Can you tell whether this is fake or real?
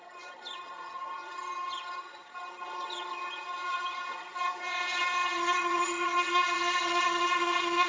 fake